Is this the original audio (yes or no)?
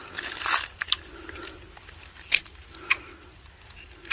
yes